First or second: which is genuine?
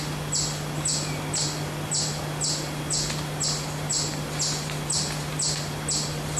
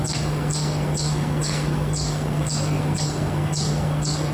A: first